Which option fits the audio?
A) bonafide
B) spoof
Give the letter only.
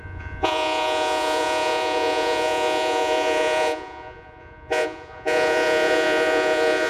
B